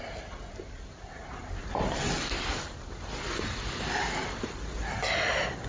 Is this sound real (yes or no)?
yes